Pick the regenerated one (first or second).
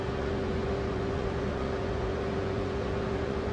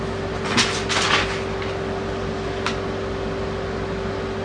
first